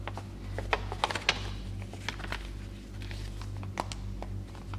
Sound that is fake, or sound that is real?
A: real